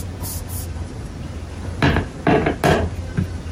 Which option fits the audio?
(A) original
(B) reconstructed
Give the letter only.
A